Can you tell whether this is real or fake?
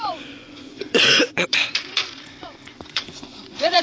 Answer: fake